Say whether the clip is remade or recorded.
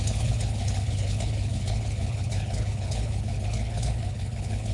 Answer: remade